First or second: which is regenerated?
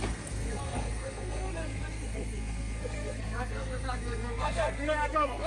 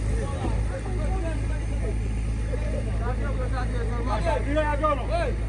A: first